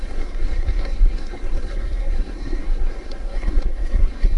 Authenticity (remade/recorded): remade